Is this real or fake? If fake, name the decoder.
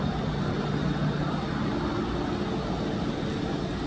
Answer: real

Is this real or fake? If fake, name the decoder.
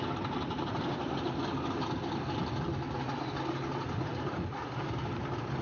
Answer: real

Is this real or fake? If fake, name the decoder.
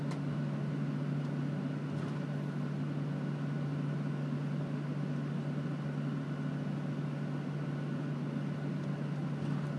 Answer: real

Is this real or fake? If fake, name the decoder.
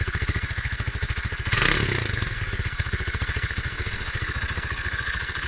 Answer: fake, codec, SNAC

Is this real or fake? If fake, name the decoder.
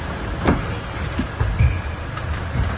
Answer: real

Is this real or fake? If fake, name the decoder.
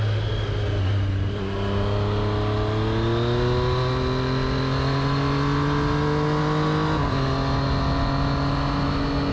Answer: real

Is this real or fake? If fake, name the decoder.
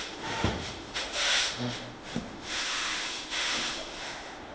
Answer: fake, autoencoder, DAC-VAE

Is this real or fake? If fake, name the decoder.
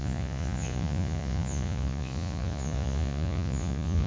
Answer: fake, vocoder, Vocos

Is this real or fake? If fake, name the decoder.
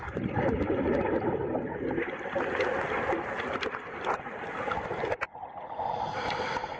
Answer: real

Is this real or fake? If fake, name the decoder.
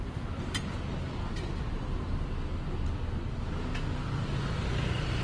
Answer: real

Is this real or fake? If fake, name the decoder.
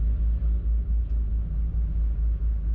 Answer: real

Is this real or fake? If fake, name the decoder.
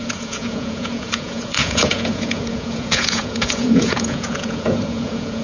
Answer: fake, vocoder, Vocos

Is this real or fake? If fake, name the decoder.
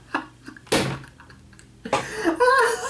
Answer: real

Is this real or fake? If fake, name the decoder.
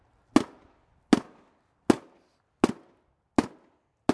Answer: real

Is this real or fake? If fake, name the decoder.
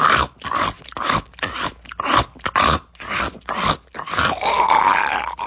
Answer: real